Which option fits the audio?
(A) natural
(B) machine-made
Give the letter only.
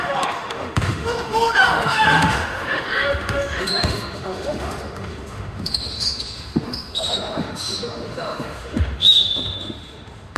B